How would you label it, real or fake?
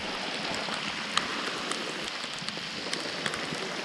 real